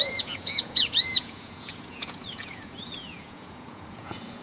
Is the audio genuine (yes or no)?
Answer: no